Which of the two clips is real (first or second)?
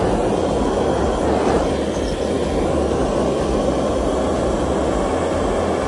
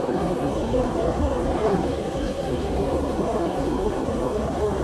first